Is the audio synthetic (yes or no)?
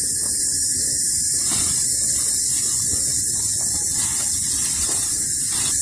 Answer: no